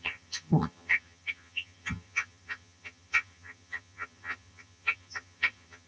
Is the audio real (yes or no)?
no